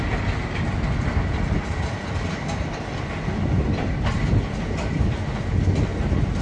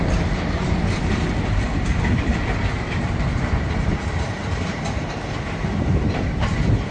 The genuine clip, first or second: first